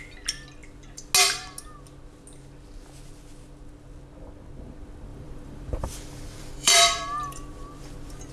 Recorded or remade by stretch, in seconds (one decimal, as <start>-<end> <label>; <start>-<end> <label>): 0.0-5.1 recorded; 5.1-8.3 remade